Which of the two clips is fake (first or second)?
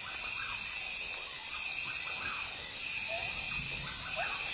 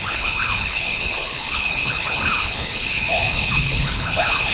second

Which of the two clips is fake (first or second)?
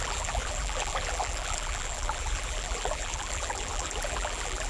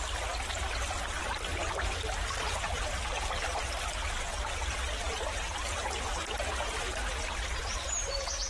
first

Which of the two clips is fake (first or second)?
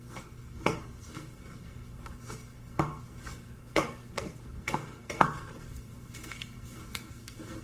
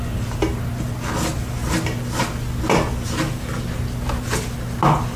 first